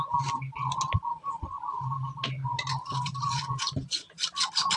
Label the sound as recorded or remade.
recorded